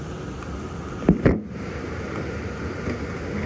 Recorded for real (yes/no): yes